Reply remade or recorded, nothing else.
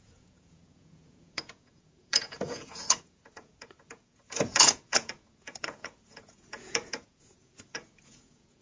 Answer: remade